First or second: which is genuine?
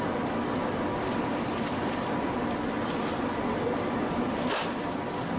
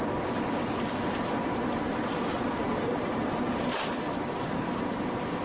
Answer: first